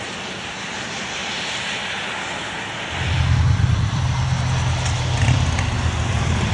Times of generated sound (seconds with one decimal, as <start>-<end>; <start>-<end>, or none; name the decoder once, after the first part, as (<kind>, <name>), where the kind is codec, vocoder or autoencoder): none